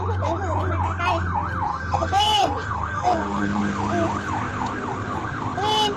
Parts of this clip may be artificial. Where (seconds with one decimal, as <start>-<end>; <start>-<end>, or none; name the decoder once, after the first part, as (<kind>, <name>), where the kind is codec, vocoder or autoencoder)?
1.7-3.6 (codec, SNAC)